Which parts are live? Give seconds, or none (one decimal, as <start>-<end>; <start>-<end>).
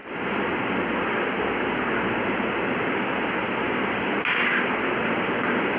0.0-5.8